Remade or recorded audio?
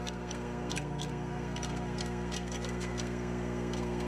remade